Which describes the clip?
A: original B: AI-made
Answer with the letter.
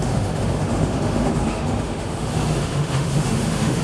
B